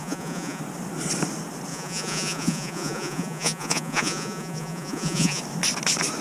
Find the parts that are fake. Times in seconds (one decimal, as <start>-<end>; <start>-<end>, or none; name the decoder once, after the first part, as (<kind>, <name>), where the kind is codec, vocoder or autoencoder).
0.0-0.6 (vocoder, Vocos); 1.7-5.4